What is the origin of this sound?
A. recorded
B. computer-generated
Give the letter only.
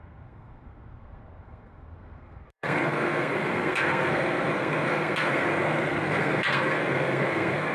B